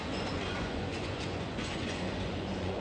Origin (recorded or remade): remade